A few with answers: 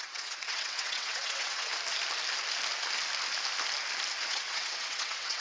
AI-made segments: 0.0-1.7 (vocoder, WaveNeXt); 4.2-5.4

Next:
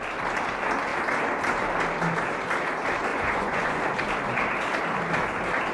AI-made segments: 3.1-3.8 (vocoder, Vocos)